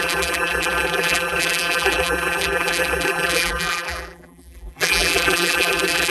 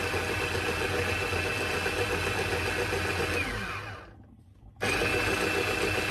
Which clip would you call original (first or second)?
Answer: second